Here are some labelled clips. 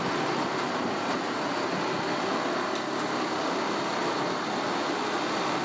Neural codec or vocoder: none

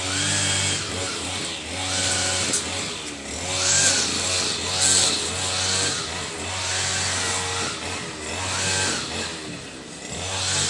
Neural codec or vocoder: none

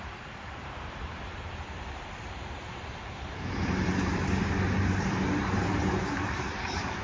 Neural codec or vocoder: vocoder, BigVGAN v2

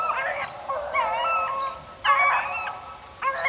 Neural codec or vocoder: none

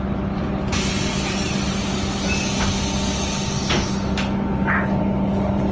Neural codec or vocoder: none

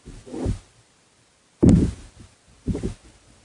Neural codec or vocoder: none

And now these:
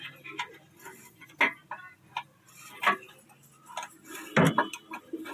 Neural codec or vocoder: none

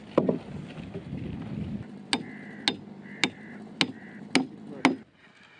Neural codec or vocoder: none